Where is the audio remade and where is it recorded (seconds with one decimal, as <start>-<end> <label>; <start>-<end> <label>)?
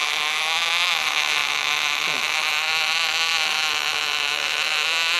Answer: 0.0-5.2 remade